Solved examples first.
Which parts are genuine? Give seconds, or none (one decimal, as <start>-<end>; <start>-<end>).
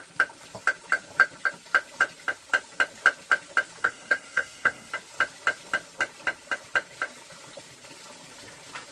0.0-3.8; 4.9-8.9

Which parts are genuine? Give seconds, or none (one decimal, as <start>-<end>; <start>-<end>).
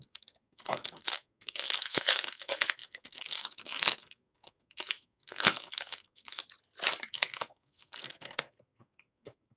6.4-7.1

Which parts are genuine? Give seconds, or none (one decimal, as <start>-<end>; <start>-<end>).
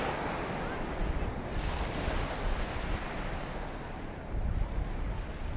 0.0-5.6